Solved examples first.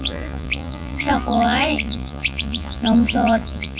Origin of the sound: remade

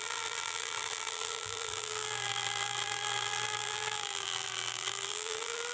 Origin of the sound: remade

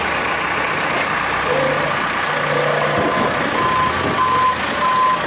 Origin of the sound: recorded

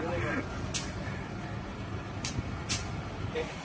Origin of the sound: recorded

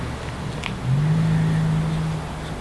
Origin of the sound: recorded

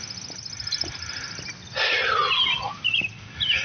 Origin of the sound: recorded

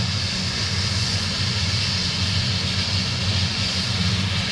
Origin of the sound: remade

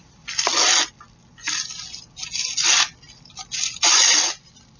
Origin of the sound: recorded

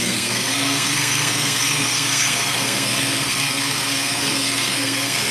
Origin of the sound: remade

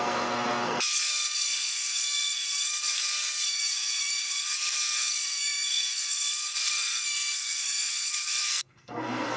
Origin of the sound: remade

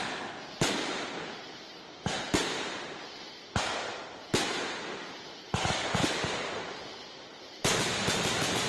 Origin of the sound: recorded